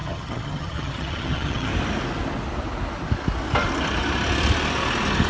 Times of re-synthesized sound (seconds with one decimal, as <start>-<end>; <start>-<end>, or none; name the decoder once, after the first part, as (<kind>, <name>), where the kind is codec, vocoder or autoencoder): 0.0-1.7 (vocoder, HiFi-GAN)